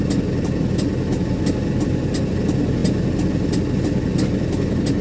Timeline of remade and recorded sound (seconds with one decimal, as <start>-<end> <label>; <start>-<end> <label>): 0.0-5.0 recorded